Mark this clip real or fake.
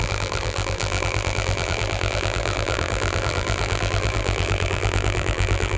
fake